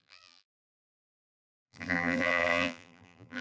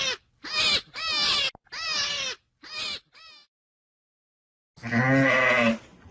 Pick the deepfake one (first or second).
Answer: first